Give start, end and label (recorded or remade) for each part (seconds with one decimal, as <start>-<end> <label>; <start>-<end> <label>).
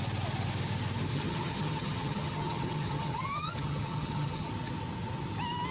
0.0-1.1 recorded; 1.1-4.5 remade; 4.5-5.7 recorded